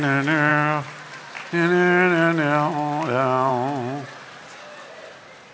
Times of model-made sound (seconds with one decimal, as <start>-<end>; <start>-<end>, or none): none